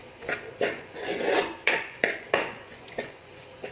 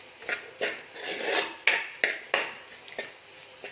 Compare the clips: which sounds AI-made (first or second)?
first